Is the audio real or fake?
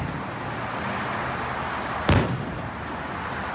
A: real